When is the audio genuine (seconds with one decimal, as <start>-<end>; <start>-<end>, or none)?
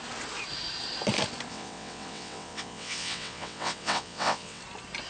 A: 0.0-1.5; 4.6-5.1